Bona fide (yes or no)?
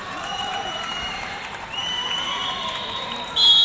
no